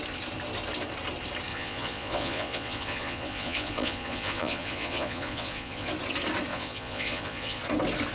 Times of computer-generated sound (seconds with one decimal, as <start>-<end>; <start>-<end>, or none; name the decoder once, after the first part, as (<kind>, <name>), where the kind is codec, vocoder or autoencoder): 1.5-5.9 (vocoder, Vocos); 6.5-7.6